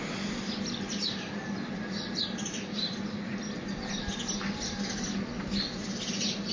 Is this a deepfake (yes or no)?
no